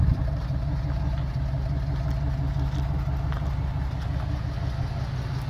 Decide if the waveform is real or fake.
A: real